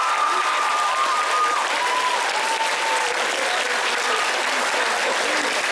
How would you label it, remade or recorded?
recorded